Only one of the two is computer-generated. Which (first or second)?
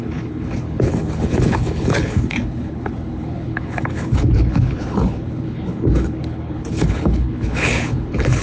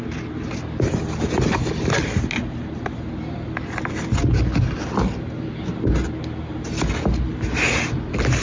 first